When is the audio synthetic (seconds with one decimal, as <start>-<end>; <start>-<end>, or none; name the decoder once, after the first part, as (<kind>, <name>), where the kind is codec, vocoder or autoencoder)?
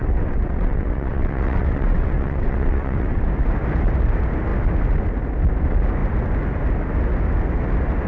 0.0-3.2 (vocoder, WaveNeXt)